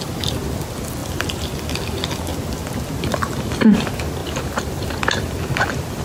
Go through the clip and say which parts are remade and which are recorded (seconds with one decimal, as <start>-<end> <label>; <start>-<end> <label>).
0.0-1.0 recorded; 1.0-1.5 remade; 1.5-4.2 recorded; 4.2-4.9 remade; 4.9-6.0 recorded